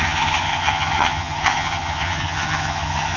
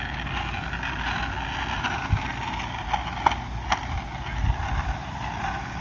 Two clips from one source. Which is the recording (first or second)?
second